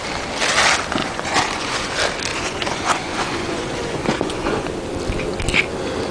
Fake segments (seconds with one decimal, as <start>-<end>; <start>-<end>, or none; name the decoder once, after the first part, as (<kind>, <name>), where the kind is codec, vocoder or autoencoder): 1.0-1.9 (vocoder, Vocos); 2.3-4.7